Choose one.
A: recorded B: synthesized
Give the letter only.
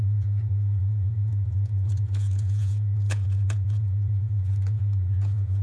B